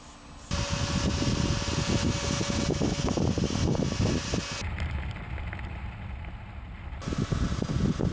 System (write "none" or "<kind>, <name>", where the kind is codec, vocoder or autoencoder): none